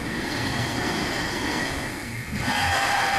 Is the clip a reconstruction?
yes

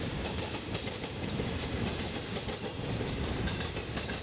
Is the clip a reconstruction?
yes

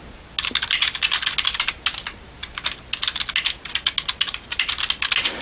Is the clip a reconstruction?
no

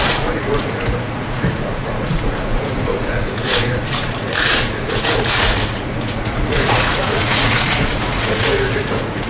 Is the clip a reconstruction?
yes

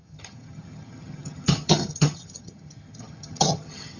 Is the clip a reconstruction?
yes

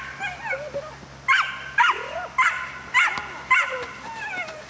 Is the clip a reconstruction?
no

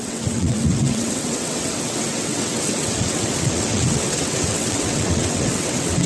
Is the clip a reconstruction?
yes